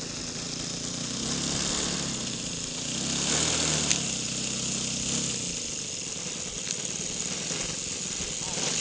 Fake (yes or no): no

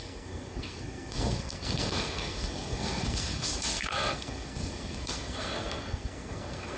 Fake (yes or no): yes